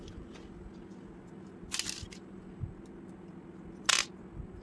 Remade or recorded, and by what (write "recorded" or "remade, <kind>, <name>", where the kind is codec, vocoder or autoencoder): recorded